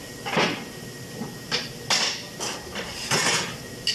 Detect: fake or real real